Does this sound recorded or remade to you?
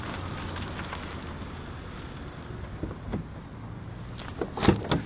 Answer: recorded